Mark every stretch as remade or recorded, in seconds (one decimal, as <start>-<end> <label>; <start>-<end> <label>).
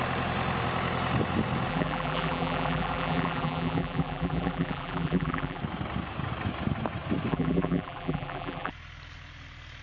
0.0-1.7 recorded; 1.7-5.6 remade; 5.6-7.3 recorded; 7.3-8.7 remade; 8.7-9.8 recorded